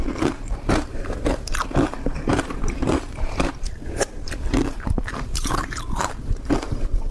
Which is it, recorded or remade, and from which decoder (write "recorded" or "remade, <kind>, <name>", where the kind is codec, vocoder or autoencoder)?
remade, vocoder, BigVGAN v2